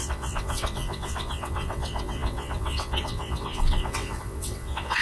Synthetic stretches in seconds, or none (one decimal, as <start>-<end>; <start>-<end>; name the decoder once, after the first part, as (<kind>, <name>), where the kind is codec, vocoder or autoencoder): 0.0-5.0 (vocoder, WaveNeXt)